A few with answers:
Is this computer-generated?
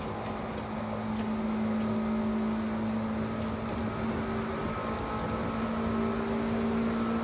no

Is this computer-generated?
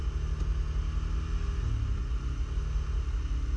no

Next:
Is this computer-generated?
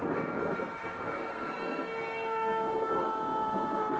yes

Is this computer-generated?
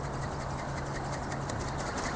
no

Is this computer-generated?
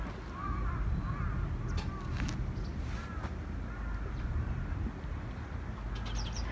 no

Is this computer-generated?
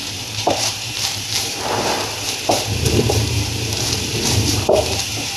yes